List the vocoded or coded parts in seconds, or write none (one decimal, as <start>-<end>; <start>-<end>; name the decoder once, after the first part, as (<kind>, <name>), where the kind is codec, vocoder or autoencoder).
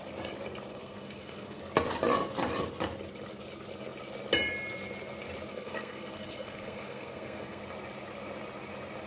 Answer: 0.7-1.6 (codec, SNAC); 5.5-7.6